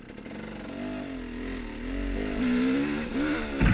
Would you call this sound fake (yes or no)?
no